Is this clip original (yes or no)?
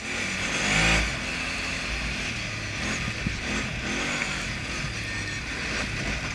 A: yes